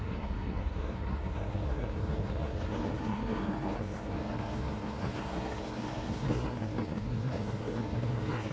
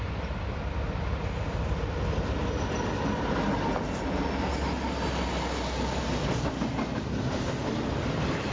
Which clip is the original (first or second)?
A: second